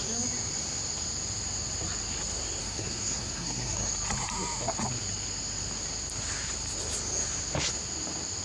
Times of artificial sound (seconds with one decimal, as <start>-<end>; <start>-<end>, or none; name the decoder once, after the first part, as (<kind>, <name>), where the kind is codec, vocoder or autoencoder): 2.6-3.9 (codec, SNAC)